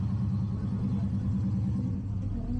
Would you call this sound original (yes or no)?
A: yes